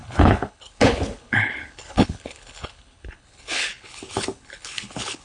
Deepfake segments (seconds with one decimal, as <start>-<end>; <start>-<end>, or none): 0.0-5.2